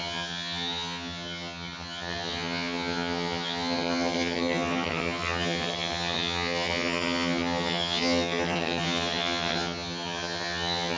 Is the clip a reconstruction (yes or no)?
yes